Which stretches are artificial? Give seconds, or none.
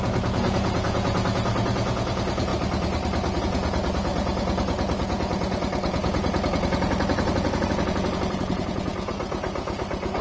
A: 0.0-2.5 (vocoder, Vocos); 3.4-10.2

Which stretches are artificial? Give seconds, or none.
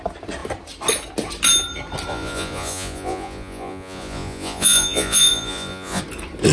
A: 2.1-6.0 (vocoder, Vocos)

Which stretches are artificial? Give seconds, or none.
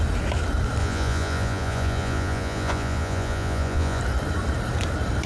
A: 0.8-4.0 (vocoder, Vocos)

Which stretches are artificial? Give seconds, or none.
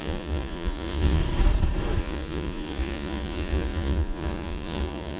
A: 0.0-1.2 (vocoder, Vocos); 2.0-5.2